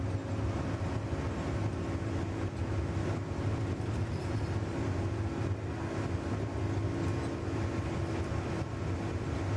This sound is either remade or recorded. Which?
recorded